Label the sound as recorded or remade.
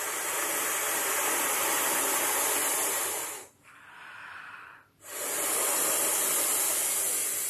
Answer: remade